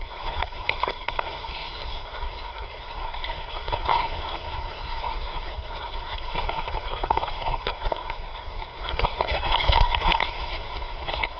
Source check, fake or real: fake